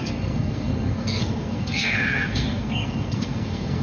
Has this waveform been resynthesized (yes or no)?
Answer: yes